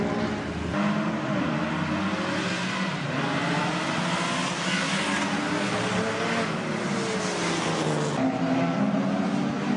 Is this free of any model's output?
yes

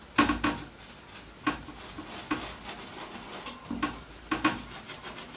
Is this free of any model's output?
yes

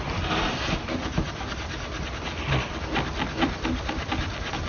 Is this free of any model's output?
yes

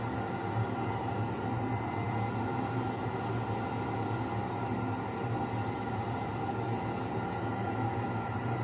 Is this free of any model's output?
yes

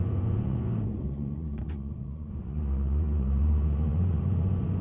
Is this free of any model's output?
no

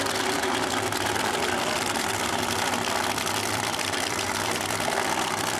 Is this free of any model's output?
no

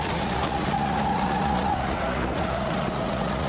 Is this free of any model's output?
no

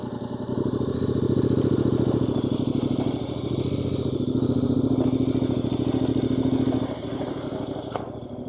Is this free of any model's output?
yes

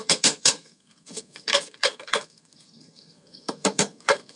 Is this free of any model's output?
no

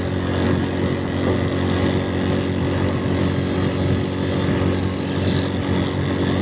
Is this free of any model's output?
yes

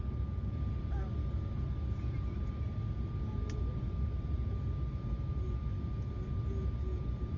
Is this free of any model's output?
yes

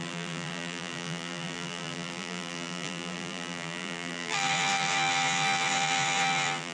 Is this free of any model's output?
no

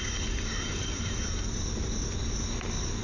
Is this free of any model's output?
yes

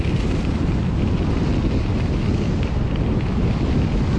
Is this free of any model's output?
yes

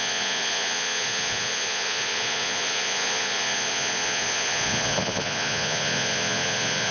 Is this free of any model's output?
no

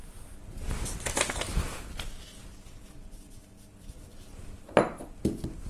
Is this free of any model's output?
yes